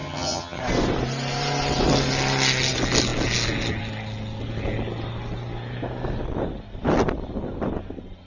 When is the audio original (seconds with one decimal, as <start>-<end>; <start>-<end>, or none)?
0.6-8.3